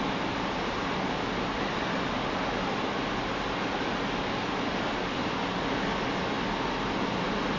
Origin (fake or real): real